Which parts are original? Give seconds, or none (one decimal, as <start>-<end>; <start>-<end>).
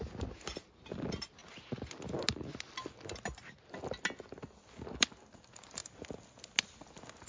0.0-7.3